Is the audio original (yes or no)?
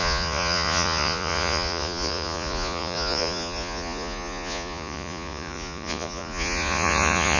no